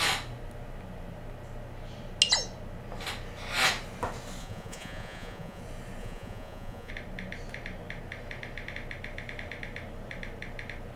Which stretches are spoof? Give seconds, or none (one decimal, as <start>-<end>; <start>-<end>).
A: 4.4-5.6; 6.0-6.9